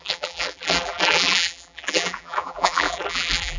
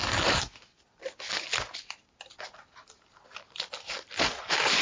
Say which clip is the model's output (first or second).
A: first